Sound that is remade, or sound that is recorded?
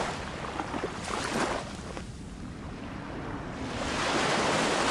recorded